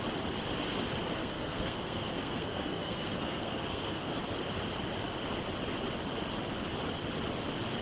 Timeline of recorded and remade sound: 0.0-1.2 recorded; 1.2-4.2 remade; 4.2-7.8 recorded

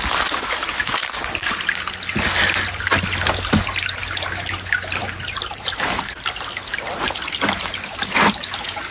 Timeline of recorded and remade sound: 0.0-5.0 recorded; 5.0-5.6 remade; 5.6-8.9 recorded

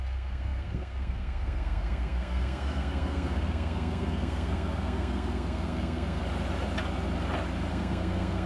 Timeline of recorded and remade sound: 0.0-6.2 remade; 6.2-7.7 recorded; 7.7-8.5 remade

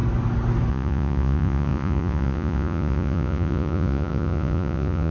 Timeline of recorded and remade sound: 0.0-0.7 recorded; 0.7-5.1 remade

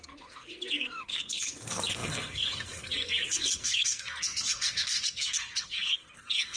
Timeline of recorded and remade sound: 0.0-6.6 remade

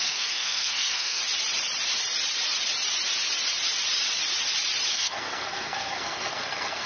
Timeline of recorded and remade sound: 0.0-1.2 remade; 1.2-4.9 recorded; 4.9-6.9 remade

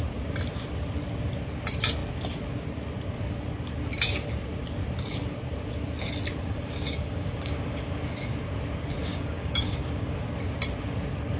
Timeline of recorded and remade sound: 0.0-6.4 recorded; 6.4-8.0 remade; 8.0-9.0 recorded; 9.0-10.3 remade; 10.3-11.4 recorded